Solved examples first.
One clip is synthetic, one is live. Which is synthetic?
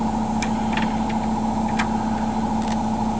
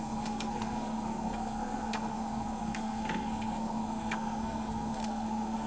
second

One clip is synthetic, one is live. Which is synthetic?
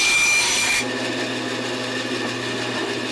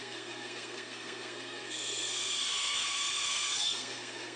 second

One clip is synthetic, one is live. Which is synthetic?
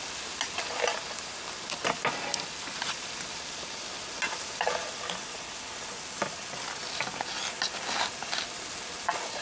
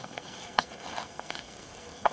second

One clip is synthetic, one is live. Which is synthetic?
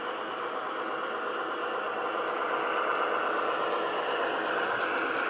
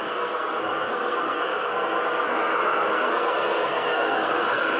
second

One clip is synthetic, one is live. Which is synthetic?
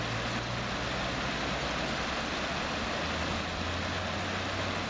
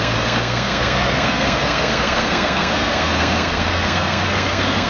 second